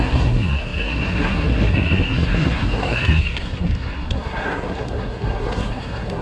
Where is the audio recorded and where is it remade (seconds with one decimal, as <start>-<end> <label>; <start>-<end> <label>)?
0.0-6.2 remade